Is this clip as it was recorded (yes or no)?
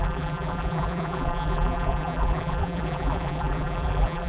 no